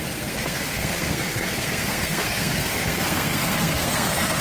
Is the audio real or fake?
fake